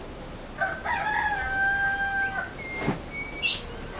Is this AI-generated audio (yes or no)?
no